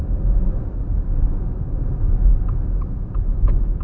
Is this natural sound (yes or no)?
yes